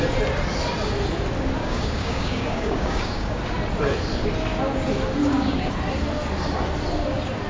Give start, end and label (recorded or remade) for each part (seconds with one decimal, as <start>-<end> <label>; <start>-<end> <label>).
0.0-1.6 recorded; 1.6-3.4 remade; 3.4-5.2 recorded; 5.2-5.7 remade; 5.7-7.5 recorded